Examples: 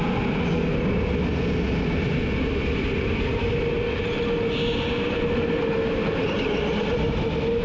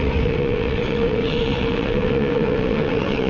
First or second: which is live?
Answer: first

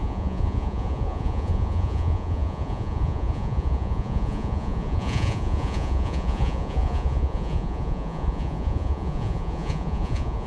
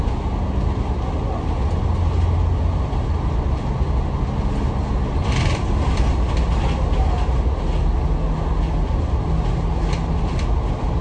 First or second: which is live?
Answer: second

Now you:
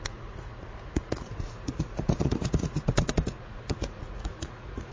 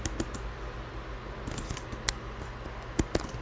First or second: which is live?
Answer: second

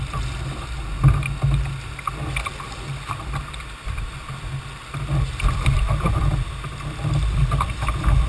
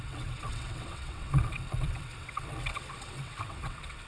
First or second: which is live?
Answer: first